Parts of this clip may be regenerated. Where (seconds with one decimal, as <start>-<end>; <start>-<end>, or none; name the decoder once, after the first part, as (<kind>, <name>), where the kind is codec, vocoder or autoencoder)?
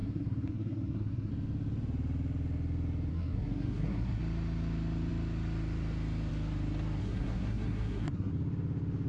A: 0.0-1.3 (codec, SNAC); 3.1-4.2; 7.0-8.3